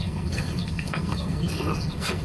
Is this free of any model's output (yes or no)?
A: no